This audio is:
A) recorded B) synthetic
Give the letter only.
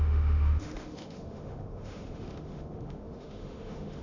B